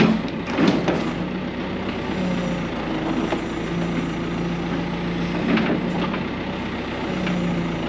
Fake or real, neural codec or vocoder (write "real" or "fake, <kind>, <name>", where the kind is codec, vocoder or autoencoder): real